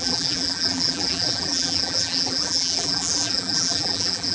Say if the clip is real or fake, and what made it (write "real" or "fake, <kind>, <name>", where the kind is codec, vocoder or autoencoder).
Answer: fake, vocoder, BigVGAN v2